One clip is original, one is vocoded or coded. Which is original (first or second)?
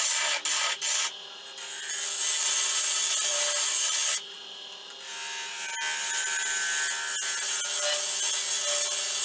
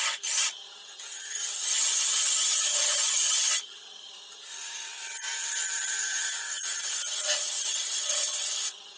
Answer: first